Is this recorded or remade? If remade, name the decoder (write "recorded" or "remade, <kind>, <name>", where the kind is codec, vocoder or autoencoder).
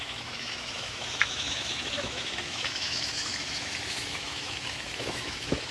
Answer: remade, autoencoder, DAC-VAE